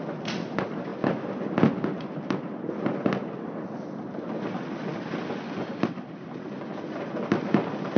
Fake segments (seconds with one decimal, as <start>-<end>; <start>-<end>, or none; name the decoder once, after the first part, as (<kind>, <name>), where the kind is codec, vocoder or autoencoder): none